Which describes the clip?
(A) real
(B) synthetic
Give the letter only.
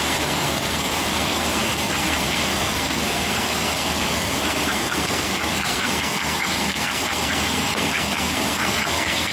B